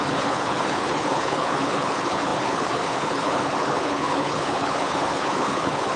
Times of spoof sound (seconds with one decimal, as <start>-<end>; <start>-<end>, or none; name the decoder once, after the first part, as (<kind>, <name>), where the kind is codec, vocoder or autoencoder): 0.0-6.0 (codec, HILCodec)